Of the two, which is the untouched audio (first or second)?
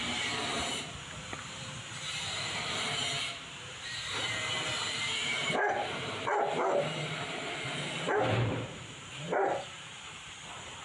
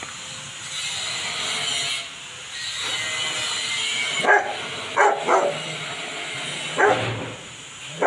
second